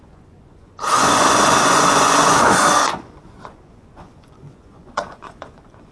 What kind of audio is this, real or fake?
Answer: fake